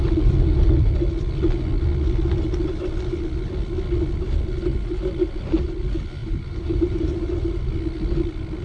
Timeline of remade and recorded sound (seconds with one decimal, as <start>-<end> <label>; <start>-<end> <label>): 0.0-6.2 recorded; 6.2-7.7 remade; 7.7-8.6 recorded